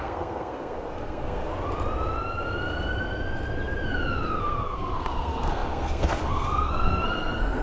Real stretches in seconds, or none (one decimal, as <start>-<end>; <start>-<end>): 1.5-4.4